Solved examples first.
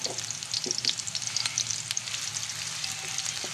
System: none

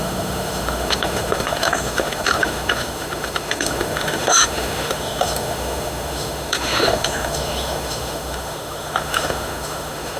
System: autoencoder, DAC-VAE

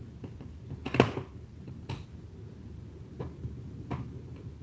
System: none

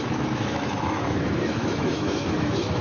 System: autoencoder, DAC-VAE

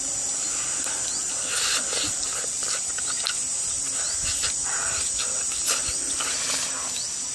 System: none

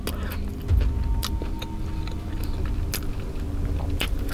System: none